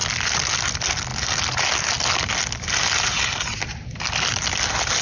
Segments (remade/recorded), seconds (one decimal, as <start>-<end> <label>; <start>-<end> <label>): 0.0-5.0 recorded